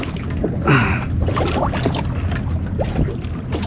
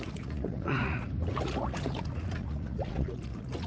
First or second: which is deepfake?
second